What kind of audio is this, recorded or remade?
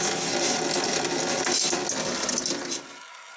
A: recorded